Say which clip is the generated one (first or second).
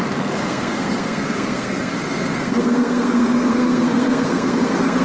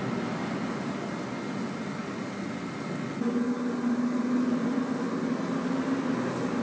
first